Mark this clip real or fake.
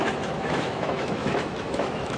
fake